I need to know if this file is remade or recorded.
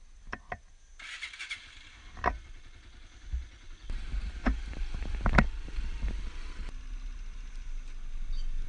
recorded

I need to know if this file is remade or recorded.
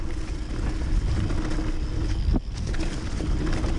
recorded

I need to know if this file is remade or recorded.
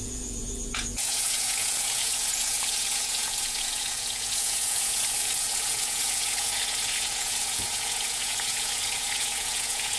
remade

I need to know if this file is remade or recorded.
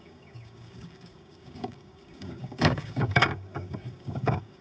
remade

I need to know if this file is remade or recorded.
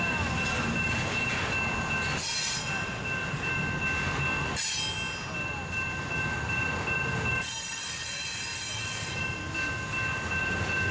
recorded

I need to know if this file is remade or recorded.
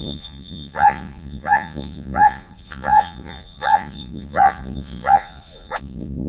remade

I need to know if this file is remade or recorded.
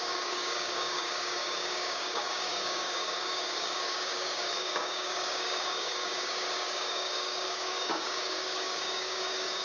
remade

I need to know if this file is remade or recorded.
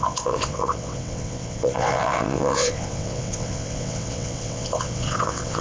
remade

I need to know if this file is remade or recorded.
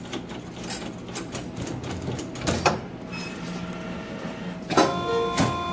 recorded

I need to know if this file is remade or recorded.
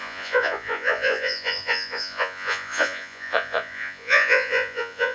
remade